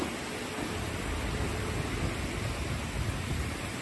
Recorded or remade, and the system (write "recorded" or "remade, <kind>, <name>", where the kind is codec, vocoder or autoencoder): recorded